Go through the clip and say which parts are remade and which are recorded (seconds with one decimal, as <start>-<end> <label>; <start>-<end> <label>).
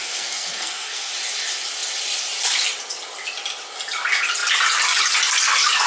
0.0-1.1 remade; 1.1-5.9 recorded